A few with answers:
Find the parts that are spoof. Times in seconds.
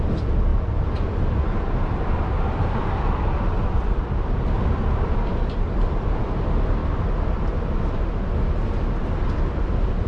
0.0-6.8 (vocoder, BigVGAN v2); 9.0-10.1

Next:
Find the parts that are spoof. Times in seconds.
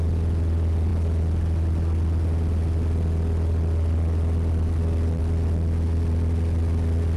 none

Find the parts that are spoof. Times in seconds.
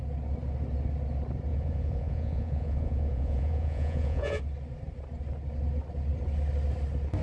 1.5-4.4 (vocoder, Vocos)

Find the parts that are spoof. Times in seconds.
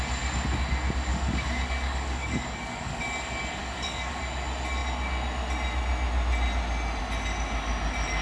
1.1-3.0 (codec, DAC); 3.6-4.2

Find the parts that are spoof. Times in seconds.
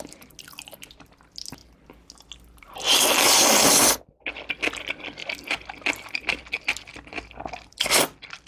none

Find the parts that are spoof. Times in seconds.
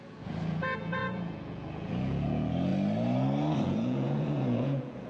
0.0-2.7 (vocoder, Vocos); 3.6-5.1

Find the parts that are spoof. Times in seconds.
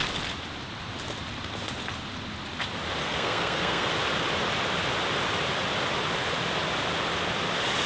3.0-3.9 (codec, SNAC)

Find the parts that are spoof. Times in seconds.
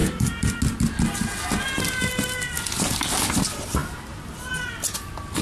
0.0-0.6 (vocoder, BigVGAN v2)